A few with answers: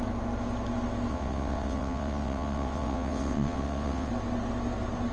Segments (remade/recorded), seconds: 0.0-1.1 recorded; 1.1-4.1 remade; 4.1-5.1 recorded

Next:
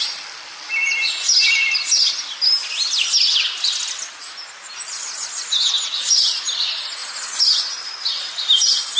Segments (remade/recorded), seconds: 0.0-9.0 recorded